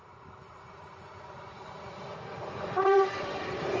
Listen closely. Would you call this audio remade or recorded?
remade